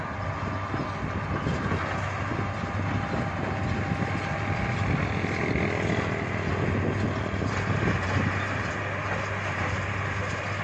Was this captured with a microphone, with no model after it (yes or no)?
yes